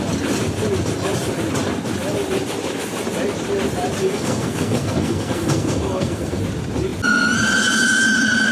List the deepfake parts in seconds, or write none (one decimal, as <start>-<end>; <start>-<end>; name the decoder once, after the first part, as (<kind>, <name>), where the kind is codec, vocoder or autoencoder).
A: 4.0-6.4 (codec, SNAC)